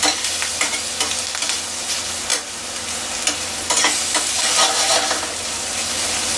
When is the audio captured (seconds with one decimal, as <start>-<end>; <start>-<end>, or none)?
0.0-6.4